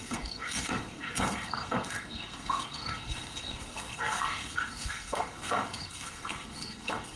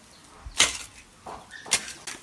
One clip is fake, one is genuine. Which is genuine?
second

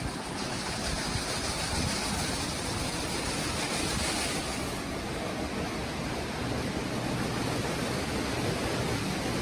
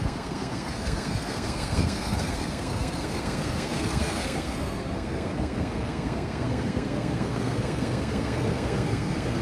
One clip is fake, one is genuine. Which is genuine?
first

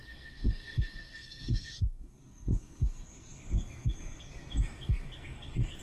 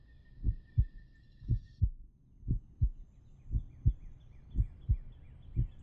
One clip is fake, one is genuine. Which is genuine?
second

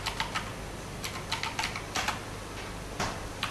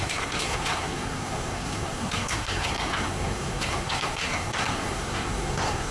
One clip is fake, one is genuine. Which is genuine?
first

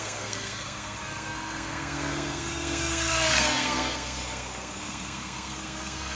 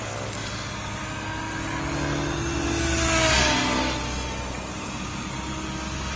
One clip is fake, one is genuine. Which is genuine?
second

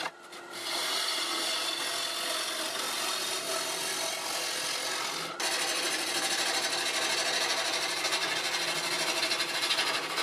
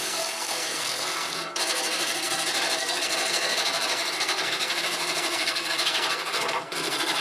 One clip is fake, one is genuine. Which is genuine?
first